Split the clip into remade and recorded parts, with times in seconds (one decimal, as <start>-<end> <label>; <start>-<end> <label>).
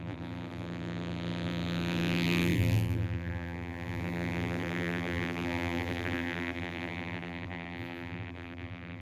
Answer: 0.0-9.0 remade